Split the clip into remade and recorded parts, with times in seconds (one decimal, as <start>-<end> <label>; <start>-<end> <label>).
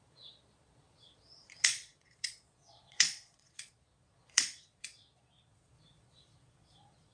0.0-7.1 remade